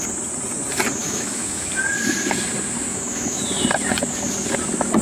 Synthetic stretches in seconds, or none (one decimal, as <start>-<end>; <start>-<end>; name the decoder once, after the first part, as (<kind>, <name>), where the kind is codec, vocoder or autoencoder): 1.0-1.7 (autoencoder, DAC-VAE); 2.9-3.4